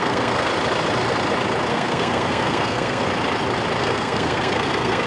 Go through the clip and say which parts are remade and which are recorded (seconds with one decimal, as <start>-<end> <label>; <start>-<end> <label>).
0.0-0.5 remade; 0.5-1.7 recorded; 1.7-3.1 remade; 3.1-3.8 recorded; 3.8-5.1 remade